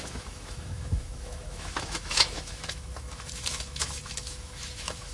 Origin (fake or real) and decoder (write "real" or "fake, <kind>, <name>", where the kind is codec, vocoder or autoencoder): fake, autoencoder, DAC-VAE